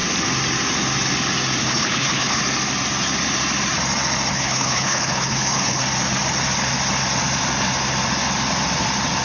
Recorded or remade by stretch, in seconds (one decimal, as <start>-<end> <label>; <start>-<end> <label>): 0.0-1.6 recorded; 1.6-2.4 remade; 2.4-4.3 recorded; 4.3-5.8 remade; 5.8-9.2 recorded